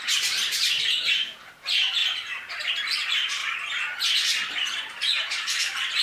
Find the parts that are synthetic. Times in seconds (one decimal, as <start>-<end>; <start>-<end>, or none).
0.0-2.0; 2.7-3.4; 4.5-6.0